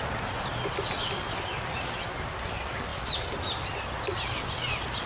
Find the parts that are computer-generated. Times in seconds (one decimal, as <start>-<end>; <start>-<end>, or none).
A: none

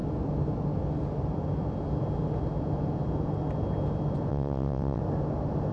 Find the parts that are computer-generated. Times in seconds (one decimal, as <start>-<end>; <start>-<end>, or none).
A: 4.3-5.0

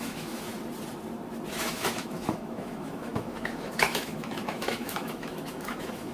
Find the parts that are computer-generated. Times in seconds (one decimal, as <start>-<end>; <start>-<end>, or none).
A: 0.0-0.5; 1.6-6.1

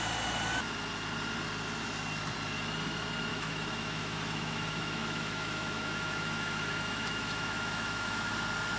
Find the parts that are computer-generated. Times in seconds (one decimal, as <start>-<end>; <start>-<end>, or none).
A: 3.3-8.3

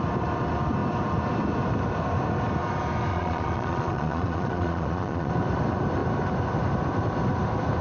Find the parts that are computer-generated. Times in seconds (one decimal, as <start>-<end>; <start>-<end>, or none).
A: 3.1-5.3